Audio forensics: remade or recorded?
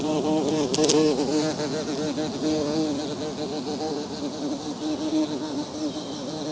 recorded